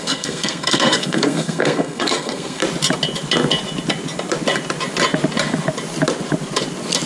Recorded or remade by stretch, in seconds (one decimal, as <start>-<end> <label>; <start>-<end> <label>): 0.0-2.6 remade; 2.6-7.1 recorded